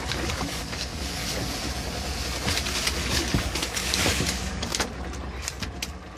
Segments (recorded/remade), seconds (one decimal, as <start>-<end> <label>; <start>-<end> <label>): 0.0-1.2 remade; 1.2-3.0 recorded; 3.0-4.7 remade; 4.7-6.2 recorded